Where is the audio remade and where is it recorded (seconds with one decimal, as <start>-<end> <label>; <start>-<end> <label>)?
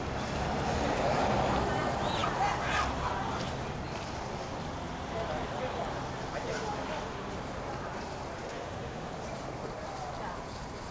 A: 0.0-8.5 recorded; 8.5-9.1 remade; 9.1-10.9 recorded